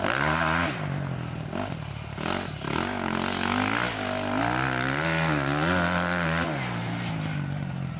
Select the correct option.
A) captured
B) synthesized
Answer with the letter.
A